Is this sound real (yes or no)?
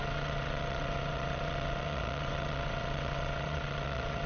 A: no